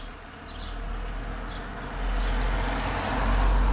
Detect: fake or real real